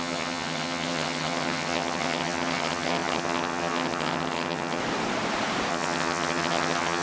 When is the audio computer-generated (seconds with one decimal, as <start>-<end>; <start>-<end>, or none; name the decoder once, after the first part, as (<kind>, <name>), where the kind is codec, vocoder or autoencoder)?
0.0-4.8 (vocoder, HiFi-GAN); 5.7-7.0